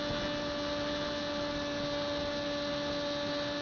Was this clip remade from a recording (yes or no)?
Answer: no